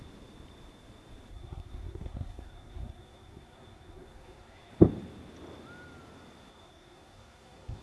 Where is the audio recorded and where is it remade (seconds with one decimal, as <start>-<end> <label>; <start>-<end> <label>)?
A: 0.0-1.3 recorded; 1.3-4.7 remade; 4.7-6.5 recorded; 6.5-7.8 remade